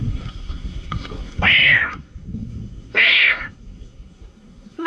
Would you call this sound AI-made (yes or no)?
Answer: yes